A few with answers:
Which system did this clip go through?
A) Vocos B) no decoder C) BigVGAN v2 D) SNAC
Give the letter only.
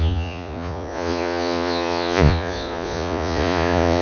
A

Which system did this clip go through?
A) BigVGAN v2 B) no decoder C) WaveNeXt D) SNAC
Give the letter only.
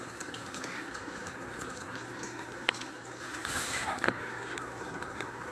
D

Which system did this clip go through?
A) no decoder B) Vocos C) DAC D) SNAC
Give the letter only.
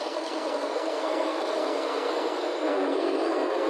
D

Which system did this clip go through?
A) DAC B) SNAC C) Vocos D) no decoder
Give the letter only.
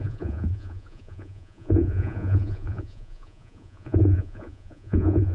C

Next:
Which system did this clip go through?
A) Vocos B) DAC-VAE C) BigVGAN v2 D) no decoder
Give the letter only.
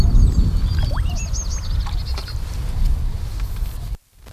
D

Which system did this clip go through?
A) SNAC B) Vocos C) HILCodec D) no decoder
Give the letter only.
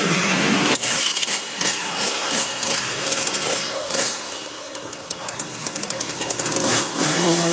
A